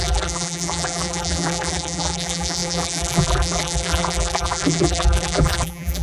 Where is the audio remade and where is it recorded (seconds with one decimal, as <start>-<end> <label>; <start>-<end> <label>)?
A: 0.0-6.0 remade